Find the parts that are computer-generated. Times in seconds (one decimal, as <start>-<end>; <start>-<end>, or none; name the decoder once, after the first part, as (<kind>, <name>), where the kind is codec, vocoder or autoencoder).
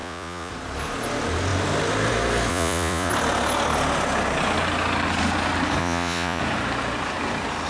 0.0-0.5 (vocoder, Vocos); 2.5-3.1; 5.8-6.4